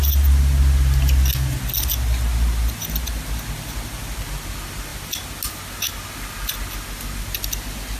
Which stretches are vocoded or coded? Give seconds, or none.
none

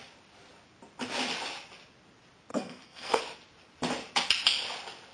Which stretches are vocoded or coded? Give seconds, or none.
2.5-3.2 (codec, SNAC)

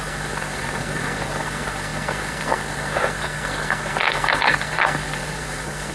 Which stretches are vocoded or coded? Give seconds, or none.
0.0-5.9 (codec, SNAC)

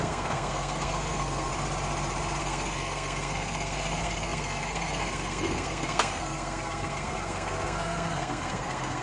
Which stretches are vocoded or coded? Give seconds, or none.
0.0-1.5 (codec, SNAC); 2.4-9.0

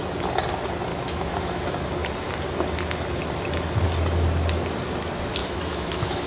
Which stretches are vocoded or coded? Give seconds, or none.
0.9-1.6 (autoencoder, DAC-VAE); 5.4-6.3

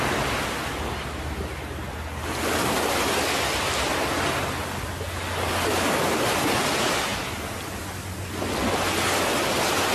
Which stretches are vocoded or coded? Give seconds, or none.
none

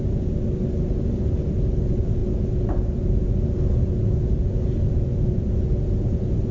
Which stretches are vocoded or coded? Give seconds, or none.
none

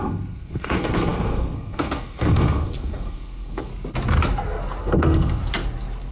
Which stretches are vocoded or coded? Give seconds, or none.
0.0-3.7 (codec, SNAC); 4.8-5.4